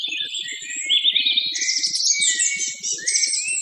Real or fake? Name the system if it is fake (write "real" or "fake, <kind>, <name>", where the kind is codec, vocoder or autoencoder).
real